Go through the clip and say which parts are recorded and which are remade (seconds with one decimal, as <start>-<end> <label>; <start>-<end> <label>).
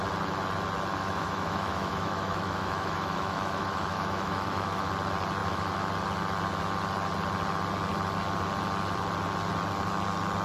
0.0-0.9 recorded; 0.9-4.9 remade; 4.9-5.4 recorded; 5.4-5.9 remade; 5.9-10.4 recorded